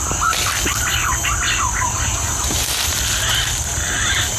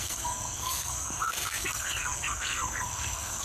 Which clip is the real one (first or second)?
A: first